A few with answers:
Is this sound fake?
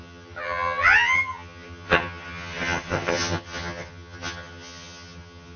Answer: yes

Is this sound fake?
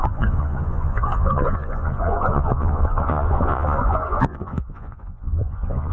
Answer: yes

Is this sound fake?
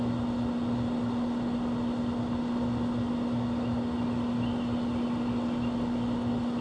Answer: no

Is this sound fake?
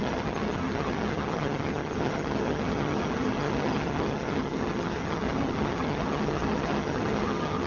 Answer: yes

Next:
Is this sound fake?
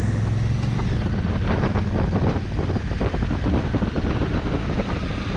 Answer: no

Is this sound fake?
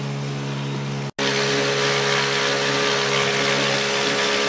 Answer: no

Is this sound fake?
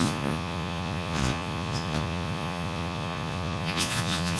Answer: yes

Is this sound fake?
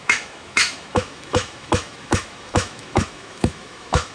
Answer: yes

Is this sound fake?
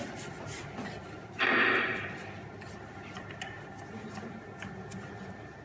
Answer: no